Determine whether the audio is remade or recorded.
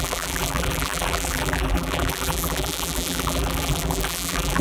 remade